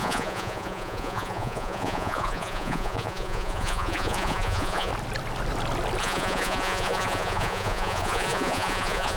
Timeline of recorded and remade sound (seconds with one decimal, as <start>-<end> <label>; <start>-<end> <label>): 0.0-4.9 remade; 4.9-6.0 recorded; 6.0-9.2 remade